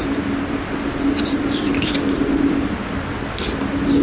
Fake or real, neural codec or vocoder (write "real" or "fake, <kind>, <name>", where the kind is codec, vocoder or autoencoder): real